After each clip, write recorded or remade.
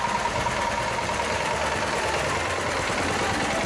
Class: recorded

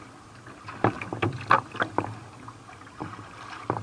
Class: recorded